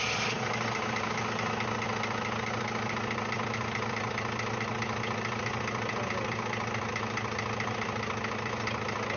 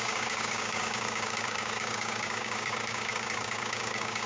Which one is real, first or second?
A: first